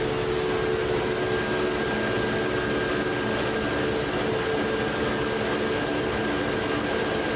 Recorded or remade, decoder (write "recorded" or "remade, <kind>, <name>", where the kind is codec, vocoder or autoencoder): recorded